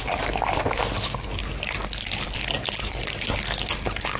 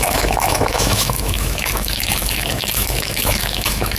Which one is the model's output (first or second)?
second